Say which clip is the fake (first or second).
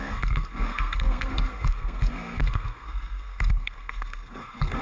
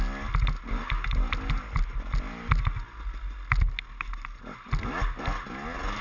first